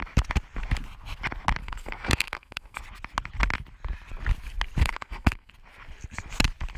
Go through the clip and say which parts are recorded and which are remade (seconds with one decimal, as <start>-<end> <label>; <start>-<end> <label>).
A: 0.0-1.6 recorded; 1.6-2.8 remade; 2.8-4.8 recorded; 4.8-5.5 remade; 5.5-6.8 recorded